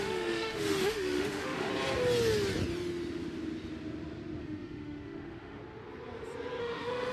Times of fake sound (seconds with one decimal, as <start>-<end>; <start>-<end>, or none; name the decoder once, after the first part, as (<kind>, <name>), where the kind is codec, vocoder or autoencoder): 0.0-1.7 (autoencoder, DAC-VAE); 4.4-5.6; 6.6-7.1